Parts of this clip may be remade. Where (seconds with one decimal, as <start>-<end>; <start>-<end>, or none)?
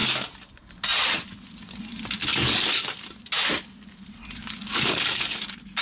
2.3-2.9; 4.4-5.8